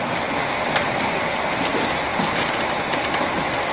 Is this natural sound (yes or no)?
yes